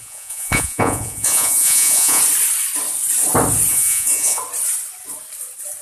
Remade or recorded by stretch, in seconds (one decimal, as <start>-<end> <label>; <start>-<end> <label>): 0.0-2.2 remade; 2.2-3.7 recorded; 3.7-4.4 remade; 4.4-5.8 recorded